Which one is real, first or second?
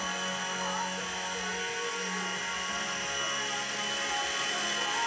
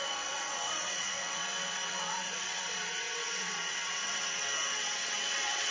first